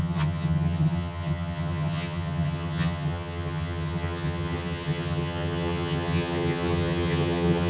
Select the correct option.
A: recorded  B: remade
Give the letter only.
B